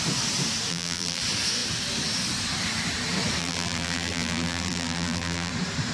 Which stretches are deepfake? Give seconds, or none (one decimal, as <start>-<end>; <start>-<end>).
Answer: 0.7-1.2; 3.4-5.5